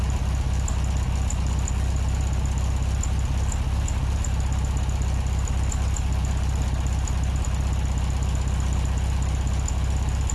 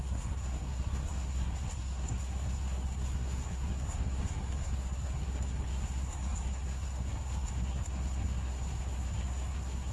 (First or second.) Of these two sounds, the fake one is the second